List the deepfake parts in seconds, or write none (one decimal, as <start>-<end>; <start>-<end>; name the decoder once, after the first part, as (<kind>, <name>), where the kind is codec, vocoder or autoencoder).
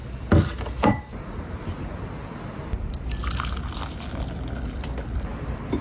0.0-1.0 (vocoder, BigVGAN v2); 2.6-5.8